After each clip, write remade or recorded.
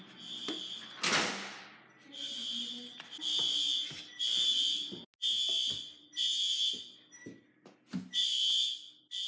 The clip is recorded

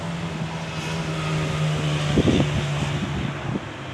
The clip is recorded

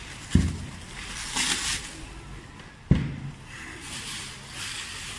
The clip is recorded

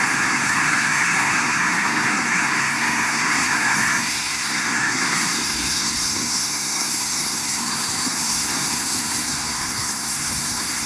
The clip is remade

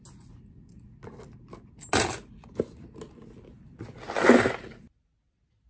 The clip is recorded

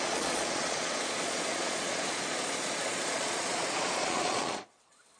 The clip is remade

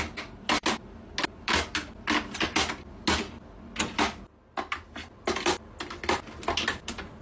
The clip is recorded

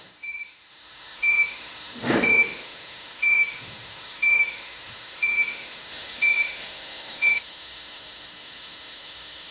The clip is remade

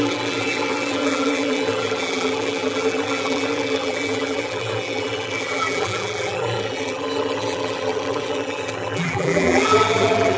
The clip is remade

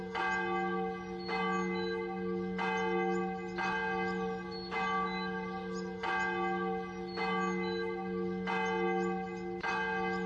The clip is recorded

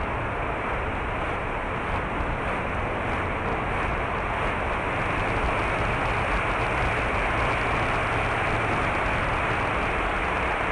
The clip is recorded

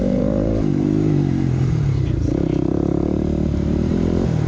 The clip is remade